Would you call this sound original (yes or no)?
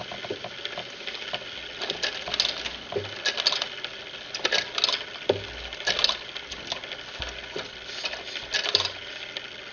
yes